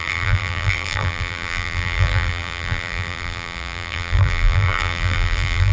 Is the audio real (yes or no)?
no